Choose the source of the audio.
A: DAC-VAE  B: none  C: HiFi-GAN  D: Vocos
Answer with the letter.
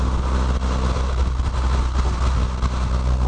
B